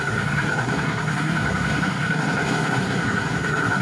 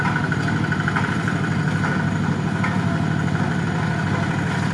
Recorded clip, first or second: second